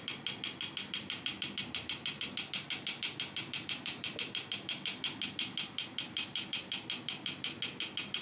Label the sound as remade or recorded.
recorded